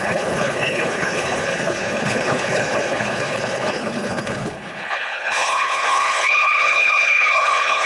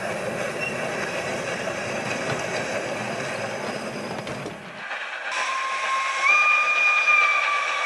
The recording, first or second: second